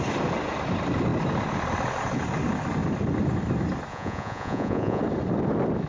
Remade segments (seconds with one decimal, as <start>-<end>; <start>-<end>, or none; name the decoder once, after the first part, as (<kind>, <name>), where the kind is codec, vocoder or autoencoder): 3.9-5.0 (vocoder, Vocos)